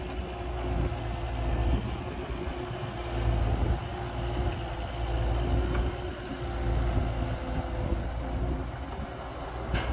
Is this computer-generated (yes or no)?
no